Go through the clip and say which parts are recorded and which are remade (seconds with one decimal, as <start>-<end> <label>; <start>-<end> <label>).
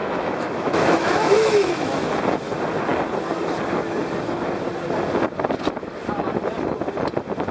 0.0-2.1 remade; 2.1-7.5 recorded